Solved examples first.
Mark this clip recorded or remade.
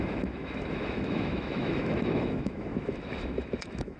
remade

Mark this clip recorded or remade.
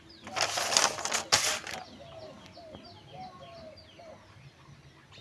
recorded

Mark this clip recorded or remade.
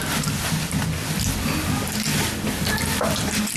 recorded